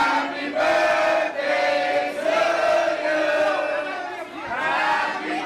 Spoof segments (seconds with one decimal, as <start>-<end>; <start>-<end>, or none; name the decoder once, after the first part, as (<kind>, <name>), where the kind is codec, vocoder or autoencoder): none